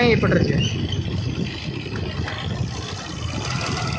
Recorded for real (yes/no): yes